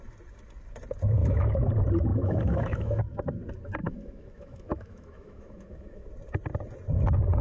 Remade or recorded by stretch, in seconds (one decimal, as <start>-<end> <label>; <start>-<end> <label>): 0.0-1.2 recorded; 1.2-1.7 remade; 1.7-2.1 recorded; 2.1-3.0 remade; 3.0-3.8 recorded; 3.8-6.1 remade; 6.1-7.4 recorded